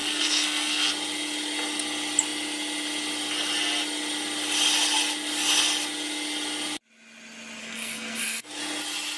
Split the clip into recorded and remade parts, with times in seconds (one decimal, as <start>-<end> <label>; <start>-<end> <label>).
0.0-0.9 remade; 0.9-7.6 recorded; 7.6-8.6 remade; 8.6-9.2 recorded